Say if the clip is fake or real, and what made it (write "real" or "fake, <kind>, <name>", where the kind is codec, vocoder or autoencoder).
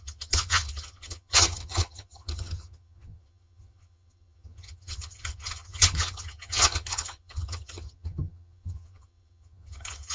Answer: fake, vocoder, HiFi-GAN